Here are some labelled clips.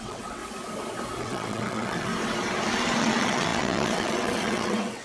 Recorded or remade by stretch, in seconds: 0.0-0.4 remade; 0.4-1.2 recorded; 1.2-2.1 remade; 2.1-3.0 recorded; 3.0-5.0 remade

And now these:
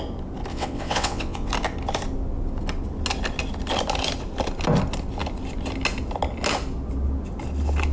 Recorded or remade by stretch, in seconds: 0.0-0.5 recorded; 0.5-1.5 remade; 1.5-7.9 recorded